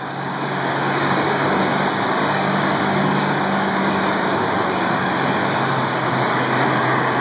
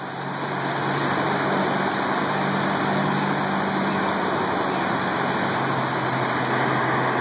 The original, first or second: second